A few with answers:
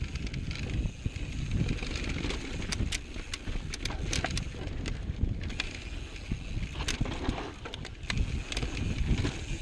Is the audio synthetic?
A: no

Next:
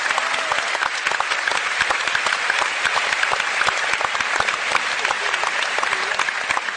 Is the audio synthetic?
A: no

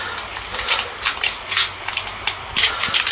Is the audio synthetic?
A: no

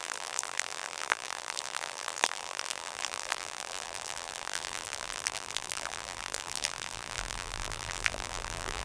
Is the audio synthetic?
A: yes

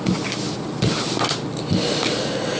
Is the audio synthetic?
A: no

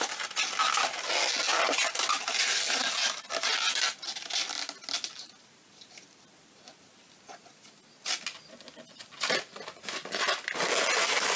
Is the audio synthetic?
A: no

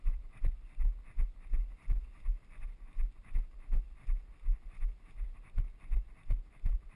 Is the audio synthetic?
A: no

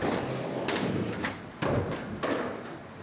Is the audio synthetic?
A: no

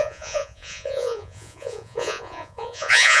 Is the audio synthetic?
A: yes